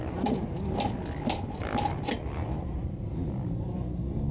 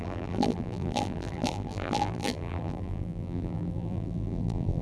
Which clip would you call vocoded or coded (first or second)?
second